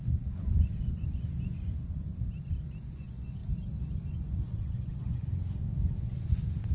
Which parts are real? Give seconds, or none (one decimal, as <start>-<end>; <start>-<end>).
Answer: 2.1-2.8; 3.4-4.1; 5.3-6.0